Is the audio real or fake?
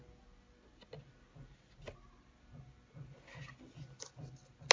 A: real